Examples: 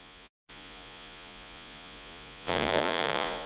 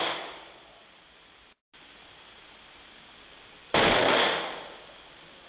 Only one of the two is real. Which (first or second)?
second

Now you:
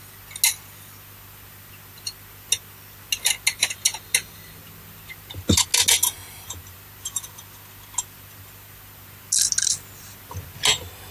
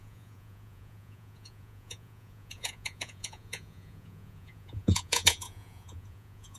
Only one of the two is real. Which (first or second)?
first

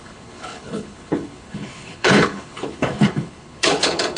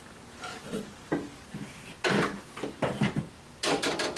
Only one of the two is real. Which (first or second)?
second